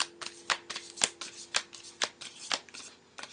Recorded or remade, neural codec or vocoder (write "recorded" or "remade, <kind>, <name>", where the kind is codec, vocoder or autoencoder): recorded